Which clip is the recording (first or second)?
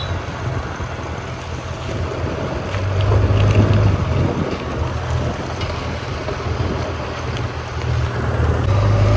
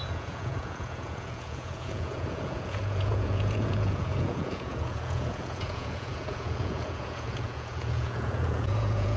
first